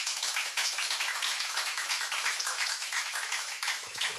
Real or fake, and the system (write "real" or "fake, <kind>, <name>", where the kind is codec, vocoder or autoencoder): fake, autoencoder, DAC-VAE